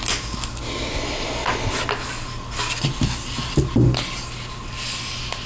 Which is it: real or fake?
real